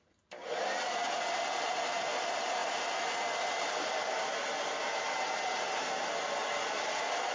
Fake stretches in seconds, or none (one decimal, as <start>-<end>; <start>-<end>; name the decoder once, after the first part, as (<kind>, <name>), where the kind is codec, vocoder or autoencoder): none